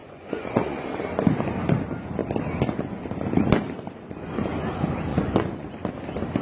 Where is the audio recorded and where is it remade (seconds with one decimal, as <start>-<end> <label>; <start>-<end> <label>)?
0.0-1.0 remade; 1.0-5.1 recorded; 5.1-5.7 remade; 5.7-6.4 recorded